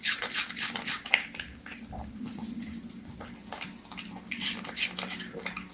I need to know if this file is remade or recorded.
recorded